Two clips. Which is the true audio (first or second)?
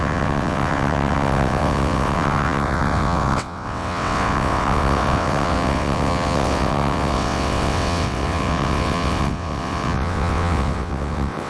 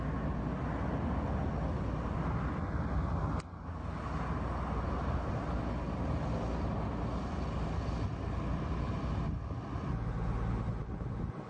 second